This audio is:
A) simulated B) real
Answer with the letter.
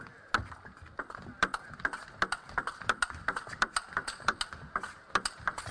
B